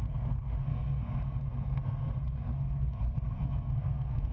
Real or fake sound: fake